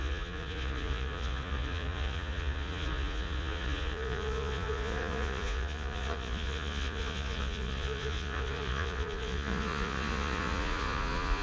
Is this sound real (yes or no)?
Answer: no